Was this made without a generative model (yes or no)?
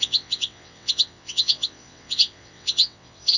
no